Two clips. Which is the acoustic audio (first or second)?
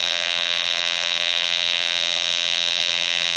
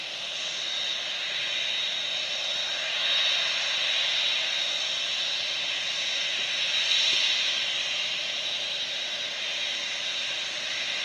second